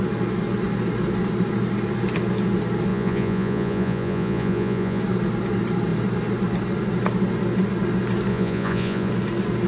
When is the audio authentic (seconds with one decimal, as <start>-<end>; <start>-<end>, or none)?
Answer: 0.0-2.9; 5.0-8.3; 9.1-9.7